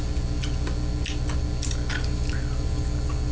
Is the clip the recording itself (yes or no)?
yes